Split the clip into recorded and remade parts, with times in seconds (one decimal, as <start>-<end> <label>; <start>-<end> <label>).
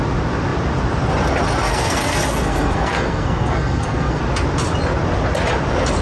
0.0-1.7 recorded; 1.7-4.2 remade; 4.2-6.0 recorded